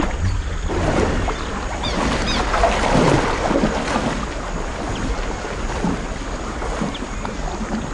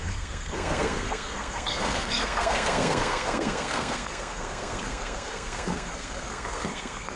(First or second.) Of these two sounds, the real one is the first